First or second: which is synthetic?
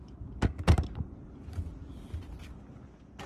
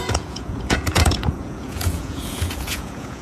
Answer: second